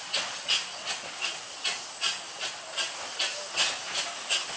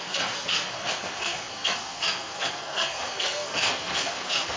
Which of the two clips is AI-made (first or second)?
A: second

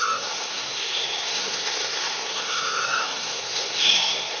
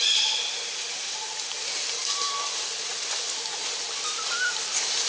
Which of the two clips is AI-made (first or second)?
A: first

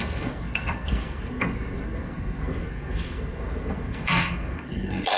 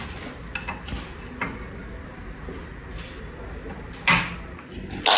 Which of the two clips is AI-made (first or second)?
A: first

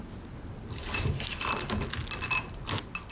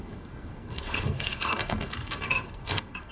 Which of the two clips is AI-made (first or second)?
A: second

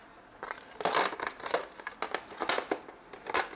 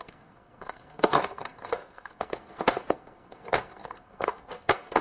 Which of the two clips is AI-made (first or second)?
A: second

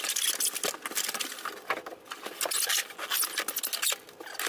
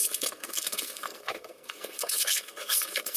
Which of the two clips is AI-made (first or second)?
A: second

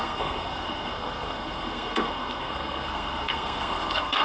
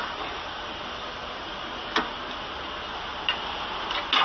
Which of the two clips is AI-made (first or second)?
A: first